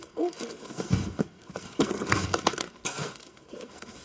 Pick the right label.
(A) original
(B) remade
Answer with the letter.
B